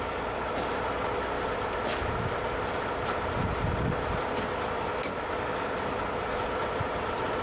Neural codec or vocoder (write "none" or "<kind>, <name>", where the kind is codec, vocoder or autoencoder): none